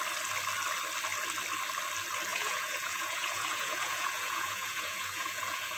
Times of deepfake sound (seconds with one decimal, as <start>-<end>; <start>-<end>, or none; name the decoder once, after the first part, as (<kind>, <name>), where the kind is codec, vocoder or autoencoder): 2.3-5.8 (vocoder, Vocos)